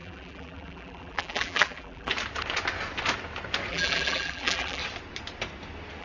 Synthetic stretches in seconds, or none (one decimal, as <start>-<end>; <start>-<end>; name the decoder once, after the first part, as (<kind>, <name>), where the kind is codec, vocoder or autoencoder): 0.0-2.1 (vocoder, BigVGAN v2); 3.7-4.8